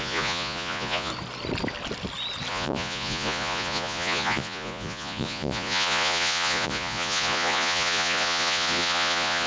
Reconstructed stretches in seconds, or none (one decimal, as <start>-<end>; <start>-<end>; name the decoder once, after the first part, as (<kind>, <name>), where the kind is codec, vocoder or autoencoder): 0.0-1.1 (vocoder, Vocos); 2.5-9.5